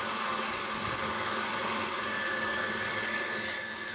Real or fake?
fake